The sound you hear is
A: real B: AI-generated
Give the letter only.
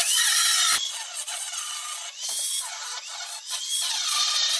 B